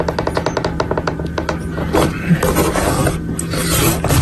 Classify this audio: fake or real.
real